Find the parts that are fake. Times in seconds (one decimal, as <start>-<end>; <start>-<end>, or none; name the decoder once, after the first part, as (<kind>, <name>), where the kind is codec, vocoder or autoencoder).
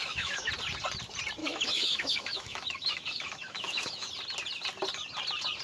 0.0-0.5 (autoencoder, DAC-VAE); 1.4-4.1